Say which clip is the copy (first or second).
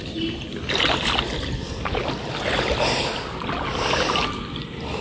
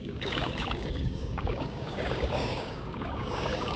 second